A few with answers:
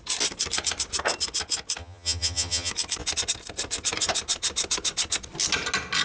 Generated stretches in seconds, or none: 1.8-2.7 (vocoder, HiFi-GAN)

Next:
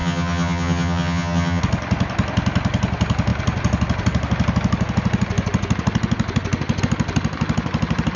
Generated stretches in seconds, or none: 0.0-1.6 (vocoder, HiFi-GAN)